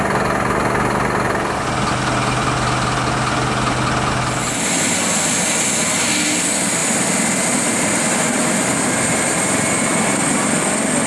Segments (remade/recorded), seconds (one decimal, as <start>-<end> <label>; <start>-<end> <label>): 0.0-11.1 recorded